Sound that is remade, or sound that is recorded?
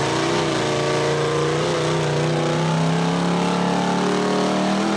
recorded